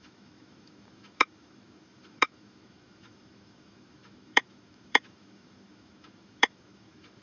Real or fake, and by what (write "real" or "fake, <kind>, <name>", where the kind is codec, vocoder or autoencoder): fake, autoencoder, DAC-VAE